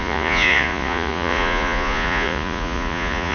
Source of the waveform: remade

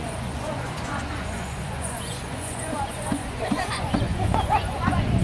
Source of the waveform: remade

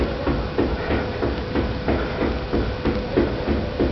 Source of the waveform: recorded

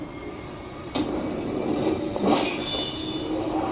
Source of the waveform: recorded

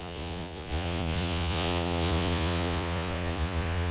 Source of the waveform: remade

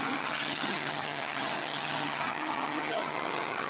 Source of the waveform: remade